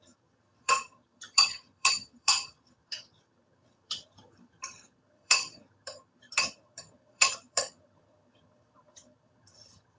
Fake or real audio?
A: fake